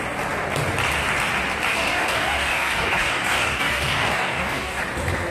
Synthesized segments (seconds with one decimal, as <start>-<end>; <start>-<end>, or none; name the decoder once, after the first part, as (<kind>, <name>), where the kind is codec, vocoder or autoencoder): 1.7-4.8 (codec, DAC)